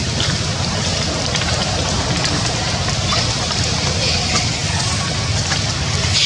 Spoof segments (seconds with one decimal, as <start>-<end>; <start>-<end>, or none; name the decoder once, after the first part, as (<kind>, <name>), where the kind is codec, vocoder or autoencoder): 1.6-2.5 (vocoder, BigVGAN v2)